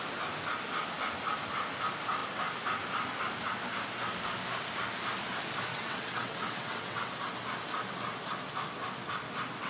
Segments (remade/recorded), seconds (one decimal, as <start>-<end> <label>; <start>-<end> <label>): 0.0-5.7 recorded; 5.7-7.1 remade; 7.1-9.7 recorded